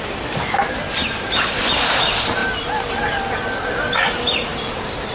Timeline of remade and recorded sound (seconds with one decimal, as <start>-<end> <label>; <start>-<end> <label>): 0.0-1.0 recorded; 1.0-1.7 remade; 1.7-2.4 recorded; 2.4-3.2 remade; 3.2-4.5 recorded; 4.5-5.1 remade